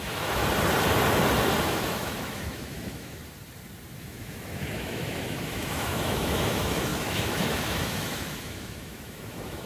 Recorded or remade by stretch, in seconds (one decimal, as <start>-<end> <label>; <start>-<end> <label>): 0.0-0.4 remade; 0.4-1.6 recorded; 1.6-3.2 remade; 3.2-4.0 recorded; 4.0-9.7 remade